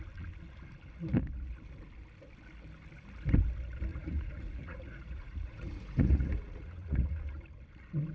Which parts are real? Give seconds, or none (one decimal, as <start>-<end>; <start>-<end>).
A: 0.0-3.9; 7.4-8.1